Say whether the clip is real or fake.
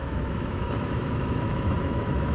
fake